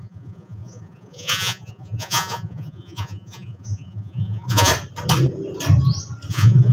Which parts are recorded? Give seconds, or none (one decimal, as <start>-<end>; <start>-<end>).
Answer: 4.7-6.3